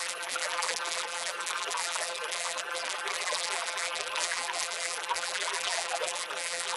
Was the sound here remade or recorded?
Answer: remade